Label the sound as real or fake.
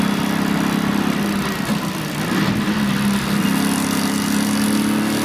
real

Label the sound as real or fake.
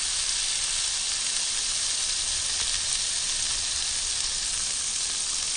real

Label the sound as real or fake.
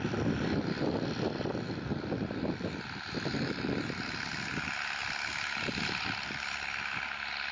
real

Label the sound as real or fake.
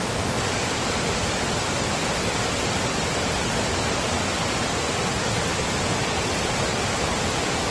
real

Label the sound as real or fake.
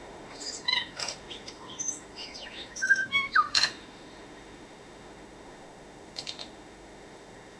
fake